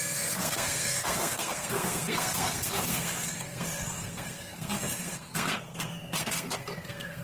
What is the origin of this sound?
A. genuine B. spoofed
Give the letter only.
B